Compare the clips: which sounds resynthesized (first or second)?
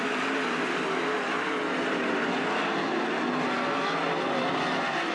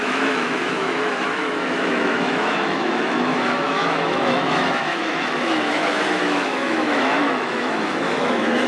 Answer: second